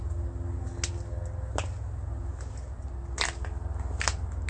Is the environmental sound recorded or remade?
recorded